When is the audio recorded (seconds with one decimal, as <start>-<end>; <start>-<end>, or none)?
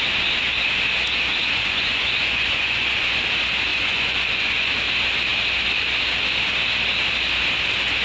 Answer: 0.0-1.4; 3.2-3.7; 4.7-8.0